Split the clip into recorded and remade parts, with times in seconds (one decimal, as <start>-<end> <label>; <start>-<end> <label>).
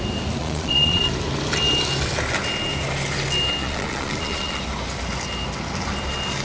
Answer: 0.0-0.4 recorded; 0.4-1.1 remade; 1.1-3.6 recorded; 3.6-4.6 remade; 4.6-6.4 recorded